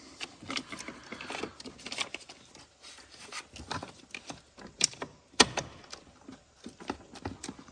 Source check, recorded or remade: recorded